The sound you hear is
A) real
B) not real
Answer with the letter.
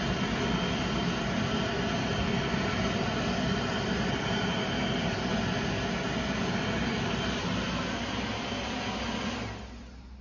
A